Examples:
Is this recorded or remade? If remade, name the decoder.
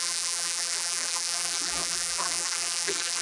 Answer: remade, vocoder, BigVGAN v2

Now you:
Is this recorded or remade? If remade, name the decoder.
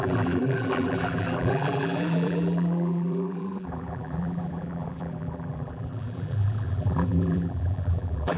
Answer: remade, vocoder, BigVGAN v2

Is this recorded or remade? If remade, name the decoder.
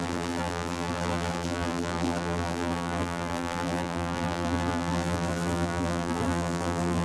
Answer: remade, vocoder, BigVGAN v2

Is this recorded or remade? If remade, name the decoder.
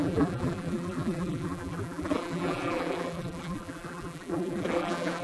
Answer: remade, vocoder, BigVGAN v2